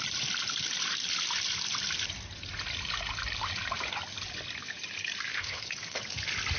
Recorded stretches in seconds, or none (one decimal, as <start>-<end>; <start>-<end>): 0.0-5.3; 6.0-6.6